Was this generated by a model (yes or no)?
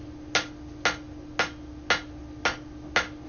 no